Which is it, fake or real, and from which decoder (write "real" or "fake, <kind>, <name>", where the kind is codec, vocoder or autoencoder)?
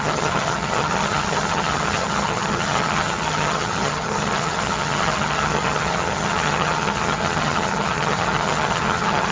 fake, vocoder, HiFi-GAN